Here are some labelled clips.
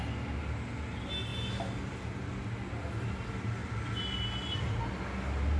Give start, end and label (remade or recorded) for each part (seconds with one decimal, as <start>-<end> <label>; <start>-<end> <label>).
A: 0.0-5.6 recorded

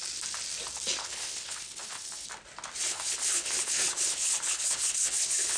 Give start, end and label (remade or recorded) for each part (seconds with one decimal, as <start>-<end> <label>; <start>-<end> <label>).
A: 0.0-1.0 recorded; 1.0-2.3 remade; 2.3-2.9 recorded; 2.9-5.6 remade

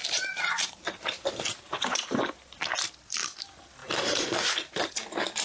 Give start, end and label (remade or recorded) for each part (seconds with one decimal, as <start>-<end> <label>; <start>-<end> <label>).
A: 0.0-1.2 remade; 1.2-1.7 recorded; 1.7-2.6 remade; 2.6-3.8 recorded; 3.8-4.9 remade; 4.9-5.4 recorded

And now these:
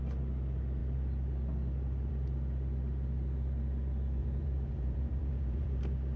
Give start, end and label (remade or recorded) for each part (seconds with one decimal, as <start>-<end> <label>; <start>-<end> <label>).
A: 0.0-4.2 recorded; 4.2-5.8 remade; 5.8-6.2 recorded

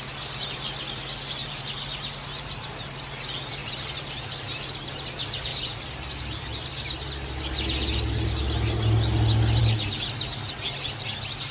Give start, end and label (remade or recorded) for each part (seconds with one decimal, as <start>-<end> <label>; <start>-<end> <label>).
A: 0.0-1.4 recorded; 1.4-3.0 remade; 3.0-3.6 recorded; 3.6-4.7 remade; 4.7-11.5 recorded